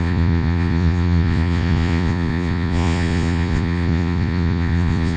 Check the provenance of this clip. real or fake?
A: fake